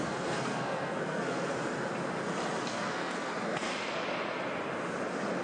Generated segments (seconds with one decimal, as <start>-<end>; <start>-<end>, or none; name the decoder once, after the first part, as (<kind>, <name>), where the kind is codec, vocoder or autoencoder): 0.0-1.5 (codec, SNAC); 2.7-3.7

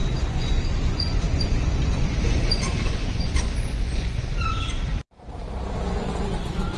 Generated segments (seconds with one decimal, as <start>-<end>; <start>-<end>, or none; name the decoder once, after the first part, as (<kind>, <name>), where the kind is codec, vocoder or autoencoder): 0.0-4.9 (vocoder, Vocos); 5.8-6.8

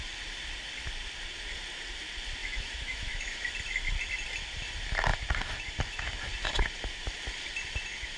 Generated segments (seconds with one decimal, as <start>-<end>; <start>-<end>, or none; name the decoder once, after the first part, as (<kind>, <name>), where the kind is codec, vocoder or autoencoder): 2.4-3.5 (autoencoder, DAC-VAE)

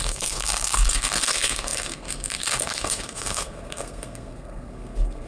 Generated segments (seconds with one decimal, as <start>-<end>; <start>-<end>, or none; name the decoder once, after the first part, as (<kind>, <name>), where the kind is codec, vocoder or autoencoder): 0.0-5.3 (codec, SNAC)

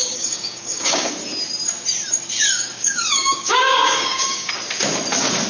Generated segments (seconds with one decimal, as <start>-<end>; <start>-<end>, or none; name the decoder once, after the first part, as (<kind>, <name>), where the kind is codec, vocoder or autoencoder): 0.0-1.1 (codec, DAC); 2.4-4.5

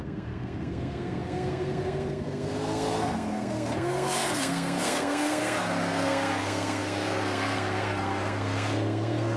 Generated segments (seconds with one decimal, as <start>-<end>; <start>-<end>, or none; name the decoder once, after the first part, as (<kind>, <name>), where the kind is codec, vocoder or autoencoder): 0.0-9.4 (codec, SNAC)